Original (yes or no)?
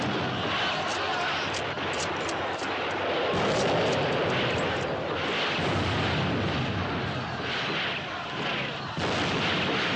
yes